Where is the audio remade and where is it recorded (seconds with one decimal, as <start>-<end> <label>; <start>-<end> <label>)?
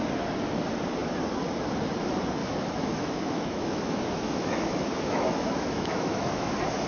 0.0-2.4 recorded; 2.4-6.5 remade; 6.5-6.9 recorded